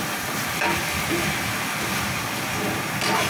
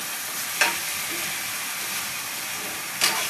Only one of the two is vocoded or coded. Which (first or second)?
second